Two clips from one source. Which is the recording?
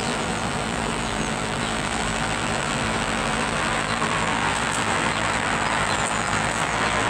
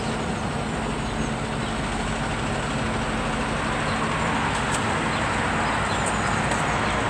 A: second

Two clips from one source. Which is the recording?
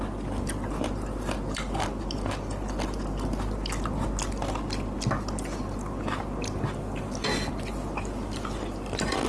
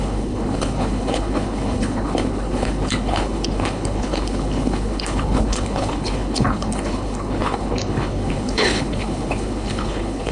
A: first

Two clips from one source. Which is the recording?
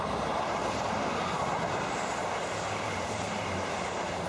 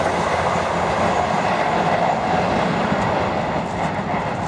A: second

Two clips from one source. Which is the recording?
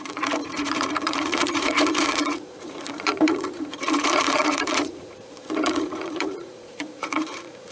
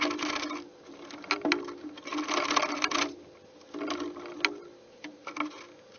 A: second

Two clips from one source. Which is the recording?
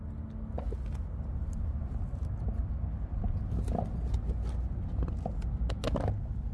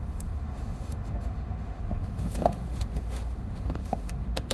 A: first